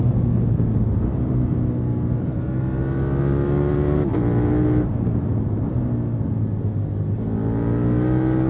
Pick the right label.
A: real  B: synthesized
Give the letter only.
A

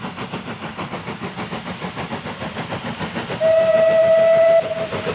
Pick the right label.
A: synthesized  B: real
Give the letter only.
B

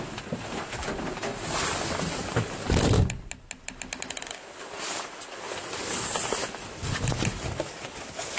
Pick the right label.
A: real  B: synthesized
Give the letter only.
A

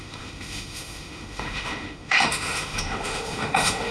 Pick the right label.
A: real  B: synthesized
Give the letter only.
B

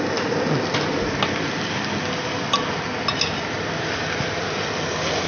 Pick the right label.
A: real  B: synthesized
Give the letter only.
A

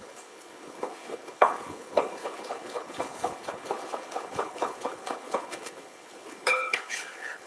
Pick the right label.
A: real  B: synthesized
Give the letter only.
B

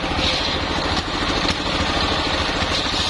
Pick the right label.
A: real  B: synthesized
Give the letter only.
A